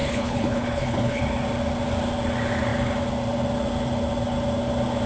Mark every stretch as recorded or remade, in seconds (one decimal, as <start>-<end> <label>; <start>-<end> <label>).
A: 0.0-1.2 remade; 1.2-5.1 recorded